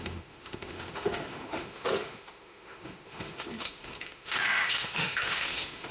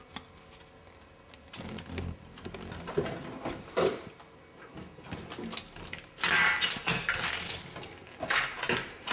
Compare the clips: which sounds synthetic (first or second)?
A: first